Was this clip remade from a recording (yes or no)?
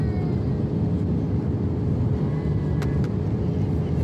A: no